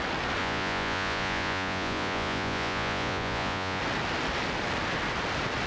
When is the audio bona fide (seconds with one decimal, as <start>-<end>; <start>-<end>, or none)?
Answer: 0.0-0.4; 3.8-5.7